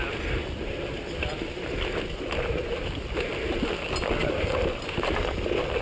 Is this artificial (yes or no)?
no